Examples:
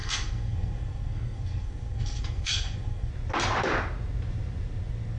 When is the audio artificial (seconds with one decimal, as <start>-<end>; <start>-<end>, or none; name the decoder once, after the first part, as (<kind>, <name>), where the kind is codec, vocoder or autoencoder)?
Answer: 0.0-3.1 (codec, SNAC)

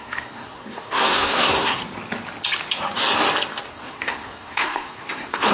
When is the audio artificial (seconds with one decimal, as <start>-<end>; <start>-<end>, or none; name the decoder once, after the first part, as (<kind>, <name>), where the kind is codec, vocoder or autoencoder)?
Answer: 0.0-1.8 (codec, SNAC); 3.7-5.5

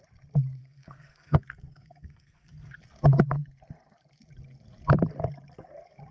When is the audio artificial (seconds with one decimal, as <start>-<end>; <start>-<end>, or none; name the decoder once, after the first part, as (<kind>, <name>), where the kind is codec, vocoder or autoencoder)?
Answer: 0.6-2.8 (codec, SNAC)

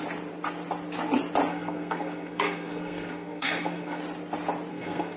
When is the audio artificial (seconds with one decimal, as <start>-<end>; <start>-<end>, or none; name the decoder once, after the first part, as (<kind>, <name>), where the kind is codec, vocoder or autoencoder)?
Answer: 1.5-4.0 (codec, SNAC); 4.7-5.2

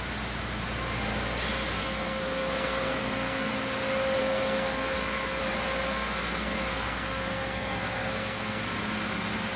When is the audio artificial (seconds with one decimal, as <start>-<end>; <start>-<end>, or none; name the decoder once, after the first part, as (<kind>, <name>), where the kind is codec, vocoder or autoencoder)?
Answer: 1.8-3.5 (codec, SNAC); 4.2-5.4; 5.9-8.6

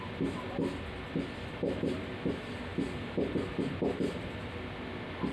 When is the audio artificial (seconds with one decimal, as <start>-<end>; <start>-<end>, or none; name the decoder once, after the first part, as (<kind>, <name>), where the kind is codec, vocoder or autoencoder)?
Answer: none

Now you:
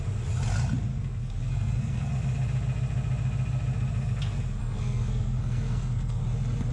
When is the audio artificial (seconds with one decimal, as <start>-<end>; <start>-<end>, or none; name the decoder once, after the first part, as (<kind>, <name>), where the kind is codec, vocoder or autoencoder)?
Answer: 0.9-2.1 (codec, SNAC); 4.6-6.2

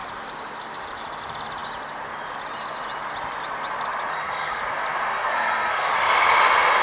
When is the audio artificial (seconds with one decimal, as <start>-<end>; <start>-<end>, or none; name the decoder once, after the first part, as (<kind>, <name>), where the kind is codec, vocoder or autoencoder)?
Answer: 4.1-4.6 (codec, SNAC); 5.1-5.9